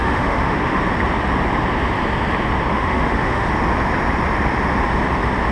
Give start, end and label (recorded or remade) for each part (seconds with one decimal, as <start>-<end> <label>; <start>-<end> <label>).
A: 0.0-0.8 remade; 0.8-2.7 recorded; 2.7-3.5 remade; 3.5-5.5 recorded